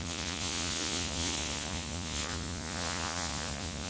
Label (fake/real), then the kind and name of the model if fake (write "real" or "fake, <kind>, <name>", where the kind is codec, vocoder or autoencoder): fake, vocoder, Vocos